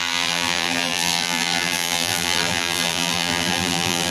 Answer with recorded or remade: remade